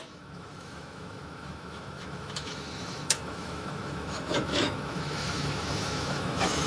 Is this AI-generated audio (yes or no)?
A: yes